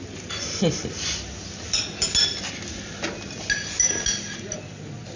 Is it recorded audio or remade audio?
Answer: recorded